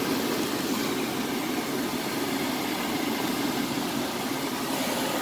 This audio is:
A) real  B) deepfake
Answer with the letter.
A